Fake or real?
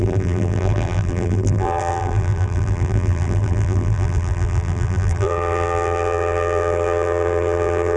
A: fake